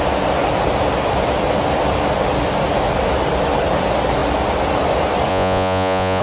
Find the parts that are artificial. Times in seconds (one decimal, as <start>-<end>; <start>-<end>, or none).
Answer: 5.3-6.2